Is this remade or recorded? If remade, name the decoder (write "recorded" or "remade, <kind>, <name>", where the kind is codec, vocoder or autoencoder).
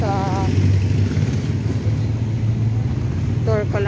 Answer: recorded